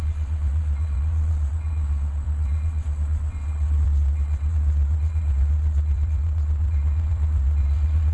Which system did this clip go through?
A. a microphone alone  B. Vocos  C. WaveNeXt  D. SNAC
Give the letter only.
C